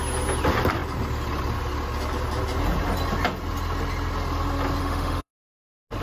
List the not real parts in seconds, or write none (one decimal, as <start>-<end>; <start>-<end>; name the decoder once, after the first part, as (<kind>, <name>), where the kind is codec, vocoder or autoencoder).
4.8-5.3 (autoencoder, DAC-VAE)